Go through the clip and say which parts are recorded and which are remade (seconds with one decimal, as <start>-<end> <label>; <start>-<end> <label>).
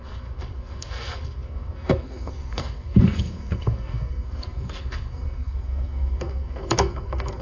0.0-7.4 remade